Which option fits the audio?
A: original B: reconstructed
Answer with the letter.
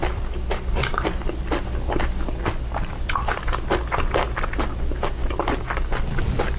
A